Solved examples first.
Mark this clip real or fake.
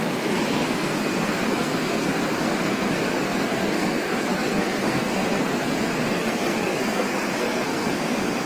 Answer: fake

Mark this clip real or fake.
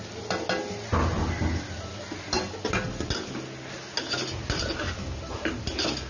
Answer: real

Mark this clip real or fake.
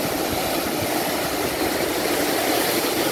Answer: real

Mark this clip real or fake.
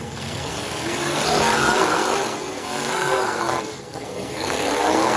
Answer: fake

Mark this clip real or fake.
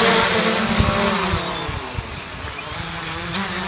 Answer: real